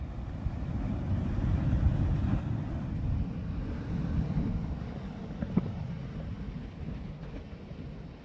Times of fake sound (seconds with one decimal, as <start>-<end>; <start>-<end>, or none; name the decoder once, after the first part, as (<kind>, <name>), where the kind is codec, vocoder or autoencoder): 6.6-7.4 (codec, HILCodec)